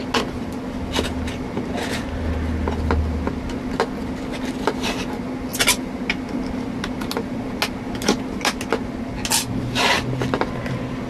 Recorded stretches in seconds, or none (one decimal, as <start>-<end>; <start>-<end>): 0.0-11.1